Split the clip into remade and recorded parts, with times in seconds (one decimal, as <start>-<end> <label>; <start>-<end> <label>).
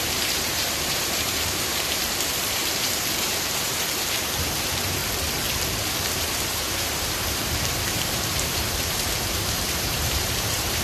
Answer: 0.0-5.0 remade; 5.0-6.1 recorded; 6.1-10.8 remade